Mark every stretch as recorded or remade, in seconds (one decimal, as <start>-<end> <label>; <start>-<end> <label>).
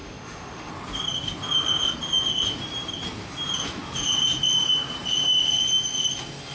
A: 0.0-0.7 remade; 0.7-6.5 recorded